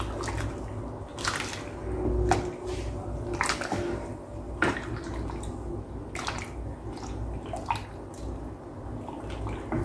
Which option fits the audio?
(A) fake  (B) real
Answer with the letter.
B